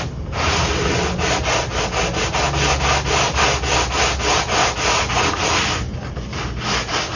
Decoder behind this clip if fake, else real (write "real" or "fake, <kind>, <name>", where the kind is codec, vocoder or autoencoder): real